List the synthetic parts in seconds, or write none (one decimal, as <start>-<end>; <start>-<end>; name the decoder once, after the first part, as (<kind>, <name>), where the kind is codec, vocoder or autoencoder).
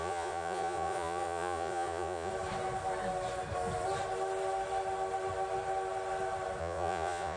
0.0-2.3 (vocoder, Vocos); 6.6-7.4